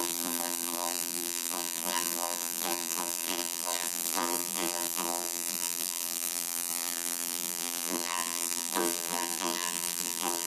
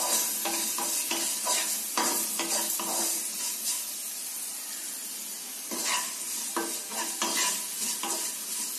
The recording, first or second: second